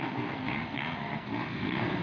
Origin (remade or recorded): remade